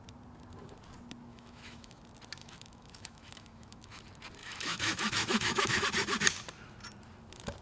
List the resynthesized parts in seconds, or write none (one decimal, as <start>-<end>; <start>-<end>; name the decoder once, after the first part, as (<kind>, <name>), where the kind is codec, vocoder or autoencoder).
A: 1.3-2.0 (autoencoder, DAC-VAE); 2.4-4.0; 4.4-5.8